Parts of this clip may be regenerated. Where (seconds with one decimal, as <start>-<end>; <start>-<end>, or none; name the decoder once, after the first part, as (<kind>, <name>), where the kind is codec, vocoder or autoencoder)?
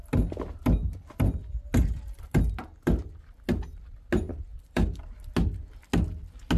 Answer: 4.5-5.1 (vocoder, BigVGAN v2)